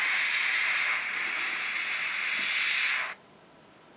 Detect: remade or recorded recorded